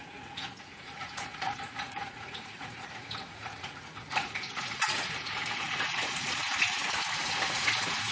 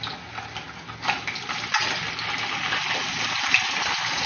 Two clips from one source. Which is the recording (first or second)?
second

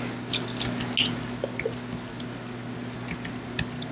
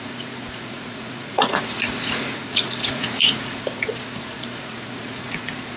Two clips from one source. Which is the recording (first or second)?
first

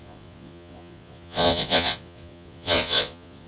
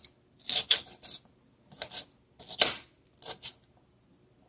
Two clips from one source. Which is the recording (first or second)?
second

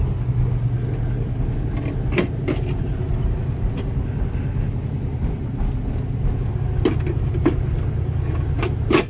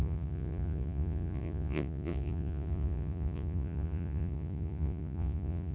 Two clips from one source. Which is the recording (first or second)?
first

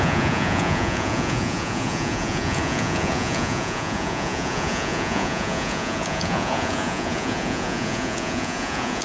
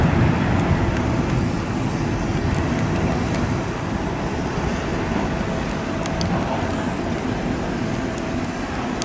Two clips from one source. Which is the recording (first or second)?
second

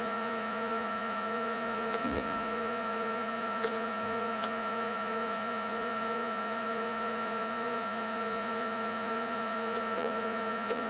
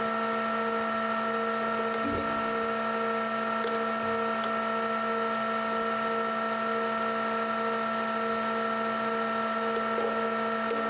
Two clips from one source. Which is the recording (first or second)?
second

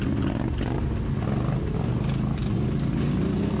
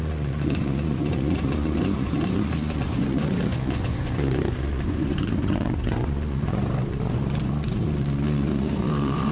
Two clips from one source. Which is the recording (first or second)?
first